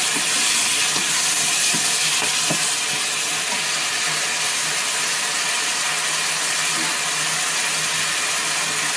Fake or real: real